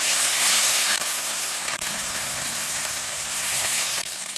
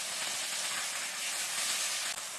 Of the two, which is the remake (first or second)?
first